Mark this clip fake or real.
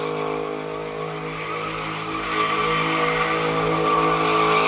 real